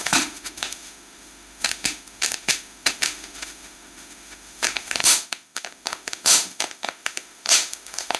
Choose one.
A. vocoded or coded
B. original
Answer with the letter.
A